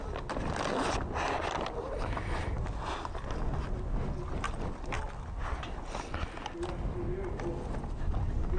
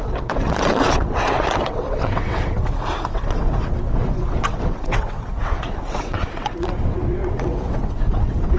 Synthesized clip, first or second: second